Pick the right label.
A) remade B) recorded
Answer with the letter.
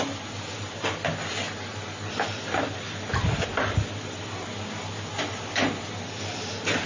B